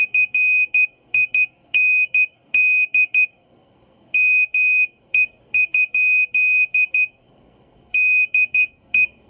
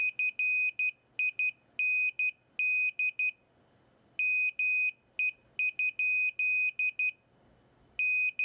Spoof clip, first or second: first